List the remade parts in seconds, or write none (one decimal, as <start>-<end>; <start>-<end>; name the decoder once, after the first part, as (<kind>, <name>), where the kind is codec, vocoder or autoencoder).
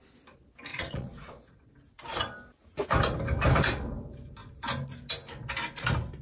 0.7-1.7 (vocoder, Vocos)